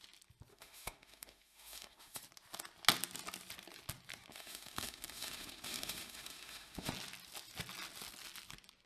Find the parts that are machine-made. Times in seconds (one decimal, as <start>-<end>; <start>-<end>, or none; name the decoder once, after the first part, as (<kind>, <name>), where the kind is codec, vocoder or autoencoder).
0.5-2.2 (autoencoder, DAC-VAE); 4.3-6.9